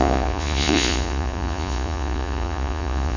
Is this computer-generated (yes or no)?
yes